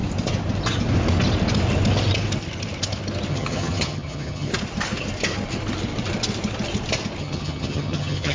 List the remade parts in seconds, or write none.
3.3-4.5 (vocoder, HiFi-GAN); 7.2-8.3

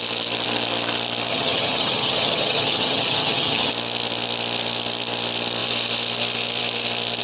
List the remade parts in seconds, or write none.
1.3-3.7 (vocoder, HiFi-GAN)

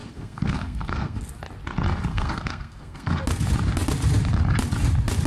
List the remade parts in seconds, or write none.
0.0-1.2 (codec, SNAC); 2.1-3.2

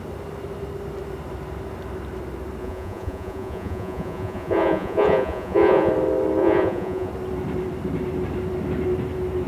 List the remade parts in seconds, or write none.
2.6-5.9 (vocoder, Vocos); 6.4-7.1

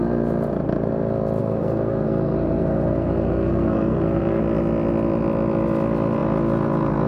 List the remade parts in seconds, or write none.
1.4-4.4 (codec, SNAC)

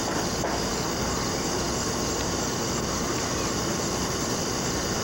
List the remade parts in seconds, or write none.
none

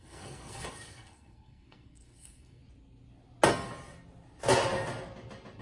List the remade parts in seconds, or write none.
0.0-2.6 (codec, SNAC)